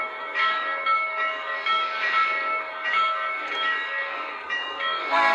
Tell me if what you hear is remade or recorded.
remade